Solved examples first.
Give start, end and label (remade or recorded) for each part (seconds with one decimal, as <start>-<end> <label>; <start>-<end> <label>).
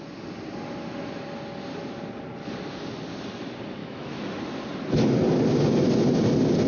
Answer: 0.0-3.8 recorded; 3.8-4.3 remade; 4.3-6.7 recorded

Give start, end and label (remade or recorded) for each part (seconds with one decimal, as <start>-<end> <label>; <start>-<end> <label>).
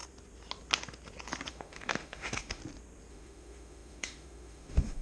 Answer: 0.0-1.5 recorded; 1.5-2.6 remade; 2.6-3.1 recorded; 3.1-5.0 remade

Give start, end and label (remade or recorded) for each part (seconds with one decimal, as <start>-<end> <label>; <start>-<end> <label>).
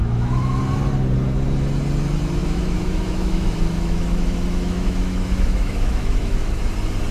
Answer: 0.0-0.6 remade; 0.6-2.4 recorded; 2.4-6.6 remade; 6.6-7.1 recorded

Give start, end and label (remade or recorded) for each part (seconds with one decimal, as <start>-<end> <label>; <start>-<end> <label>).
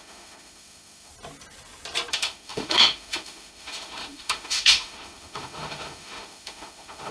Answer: 0.0-1.1 remade; 1.1-2.1 recorded; 2.1-7.1 remade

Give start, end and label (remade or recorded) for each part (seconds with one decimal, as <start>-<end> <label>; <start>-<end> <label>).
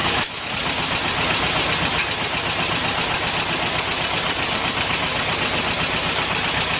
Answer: 0.0-0.5 remade; 0.5-6.8 recorded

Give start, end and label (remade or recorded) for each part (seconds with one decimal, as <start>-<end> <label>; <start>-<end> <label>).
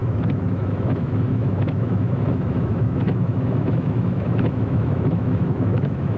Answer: 0.0-6.2 remade